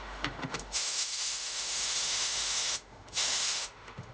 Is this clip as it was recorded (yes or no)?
no